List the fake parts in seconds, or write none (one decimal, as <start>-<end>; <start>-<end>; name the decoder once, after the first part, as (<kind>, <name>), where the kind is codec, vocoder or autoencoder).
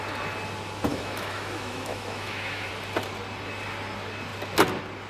0.9-2.7 (autoencoder, DAC-VAE)